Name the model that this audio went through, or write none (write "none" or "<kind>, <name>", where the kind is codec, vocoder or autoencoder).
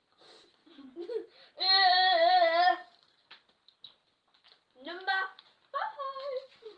none